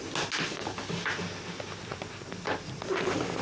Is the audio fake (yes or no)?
no